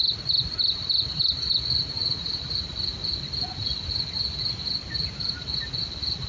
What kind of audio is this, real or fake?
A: real